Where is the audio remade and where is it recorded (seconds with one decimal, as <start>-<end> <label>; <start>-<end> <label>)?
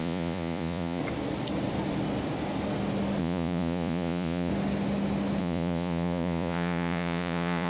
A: 0.0-1.0 remade; 1.0-3.2 recorded; 3.2-4.5 remade; 4.5-5.4 recorded; 5.4-7.7 remade